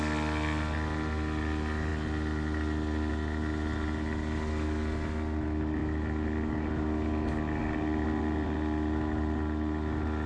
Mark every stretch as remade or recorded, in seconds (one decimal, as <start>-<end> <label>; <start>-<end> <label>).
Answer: 0.0-10.3 recorded